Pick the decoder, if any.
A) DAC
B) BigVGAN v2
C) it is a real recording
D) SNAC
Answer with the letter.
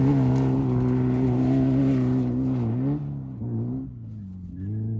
C